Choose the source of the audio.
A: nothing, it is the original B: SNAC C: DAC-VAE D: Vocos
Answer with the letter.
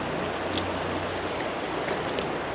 A